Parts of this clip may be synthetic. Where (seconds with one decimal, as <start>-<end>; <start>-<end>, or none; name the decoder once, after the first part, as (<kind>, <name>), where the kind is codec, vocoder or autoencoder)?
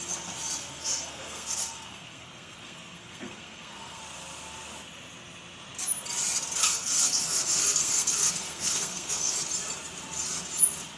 0.6-4.0 (codec, SNAC); 6.6-9.3